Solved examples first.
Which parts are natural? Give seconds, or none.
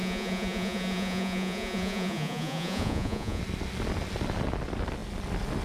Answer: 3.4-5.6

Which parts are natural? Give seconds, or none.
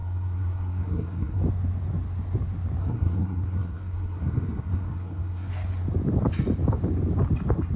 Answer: 1.4-2.8; 5.5-7.8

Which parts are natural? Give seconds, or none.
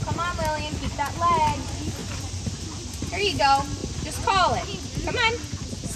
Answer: 0.0-6.0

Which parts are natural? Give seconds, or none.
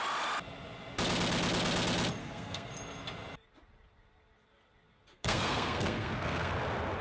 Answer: 0.0-2.2; 2.7-5.1; 6.5-7.0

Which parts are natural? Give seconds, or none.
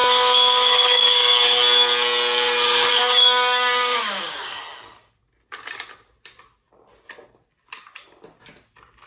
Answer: 1.3-2.9; 4.6-9.1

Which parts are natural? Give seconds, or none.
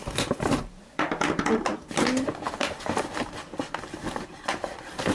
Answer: 1.7-2.5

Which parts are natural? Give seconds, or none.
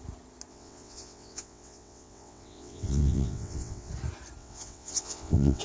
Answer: 0.0-0.5; 3.9-4.4